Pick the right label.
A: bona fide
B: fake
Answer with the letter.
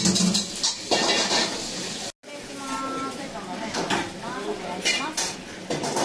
A